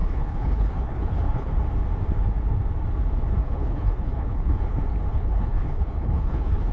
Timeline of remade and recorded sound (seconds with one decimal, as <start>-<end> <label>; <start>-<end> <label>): 0.0-1.5 remade; 1.5-3.4 recorded; 3.4-4.6 remade; 4.6-5.1 recorded; 5.1-6.7 remade